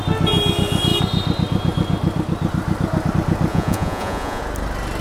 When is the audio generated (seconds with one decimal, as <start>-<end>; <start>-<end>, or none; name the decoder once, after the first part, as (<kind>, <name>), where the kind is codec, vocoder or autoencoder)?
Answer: 3.5-4.4 (vocoder, Vocos)